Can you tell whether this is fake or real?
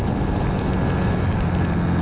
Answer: real